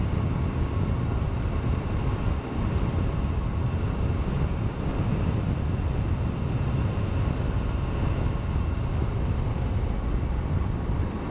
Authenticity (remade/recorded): recorded